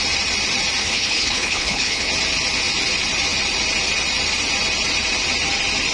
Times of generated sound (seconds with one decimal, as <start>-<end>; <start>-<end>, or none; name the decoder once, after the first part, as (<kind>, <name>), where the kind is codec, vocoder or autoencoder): 0.8-2.1 (codec, HILCodec)